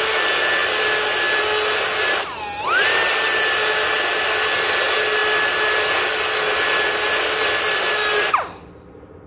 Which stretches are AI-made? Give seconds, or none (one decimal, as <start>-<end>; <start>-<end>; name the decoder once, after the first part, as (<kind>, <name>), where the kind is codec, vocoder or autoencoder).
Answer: none